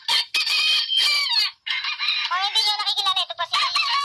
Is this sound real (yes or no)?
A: yes